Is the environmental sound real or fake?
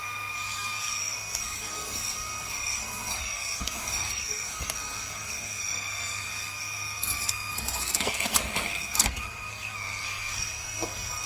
fake